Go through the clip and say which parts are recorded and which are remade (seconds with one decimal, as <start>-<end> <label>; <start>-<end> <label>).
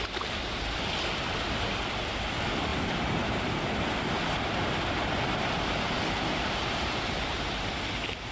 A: 0.0-2.7 recorded; 2.7-7.7 remade; 7.7-8.3 recorded